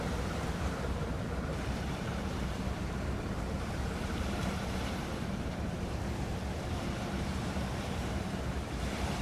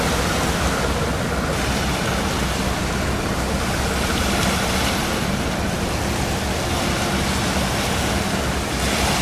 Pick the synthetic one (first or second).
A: first